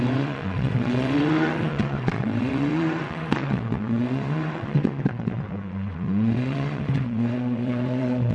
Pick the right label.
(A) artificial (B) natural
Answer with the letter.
A